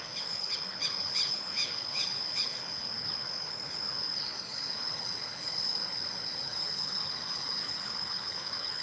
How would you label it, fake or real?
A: fake